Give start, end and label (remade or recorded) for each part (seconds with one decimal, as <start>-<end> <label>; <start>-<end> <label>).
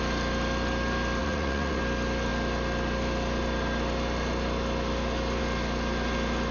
0.0-1.2 recorded; 1.2-1.8 remade; 1.8-6.5 recorded